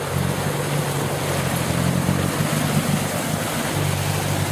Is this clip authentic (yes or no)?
yes